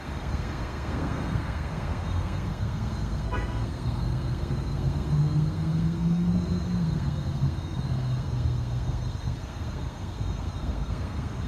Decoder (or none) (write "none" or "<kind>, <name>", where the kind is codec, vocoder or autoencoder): codec, SNAC